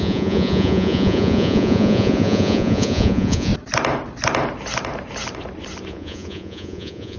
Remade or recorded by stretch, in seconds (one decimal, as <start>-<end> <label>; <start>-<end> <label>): 0.0-3.5 remade; 3.5-5.9 recorded; 5.9-7.2 remade